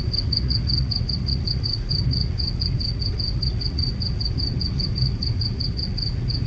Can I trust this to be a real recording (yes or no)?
no